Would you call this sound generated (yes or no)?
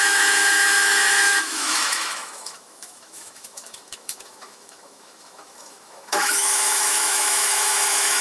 yes